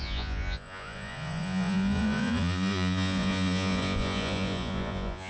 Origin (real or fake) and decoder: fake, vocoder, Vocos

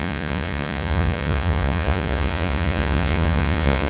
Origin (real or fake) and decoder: fake, vocoder, Vocos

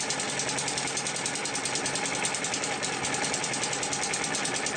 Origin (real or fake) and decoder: real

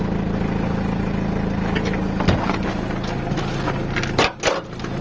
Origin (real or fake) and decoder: real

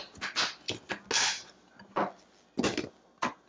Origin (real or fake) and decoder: real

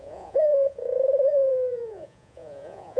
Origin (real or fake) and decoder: fake, vocoder, Vocos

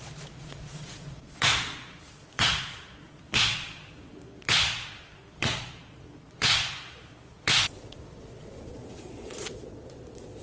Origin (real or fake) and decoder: fake, vocoder, Vocos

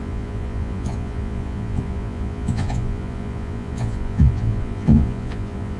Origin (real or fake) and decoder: fake, vocoder, Vocos